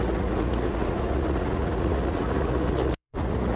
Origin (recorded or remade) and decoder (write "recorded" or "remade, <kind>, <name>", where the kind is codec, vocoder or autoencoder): remade, vocoder, Vocos